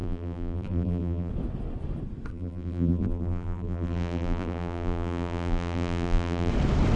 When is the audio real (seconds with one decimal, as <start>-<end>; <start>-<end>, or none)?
1.3-2.3; 6.5-7.0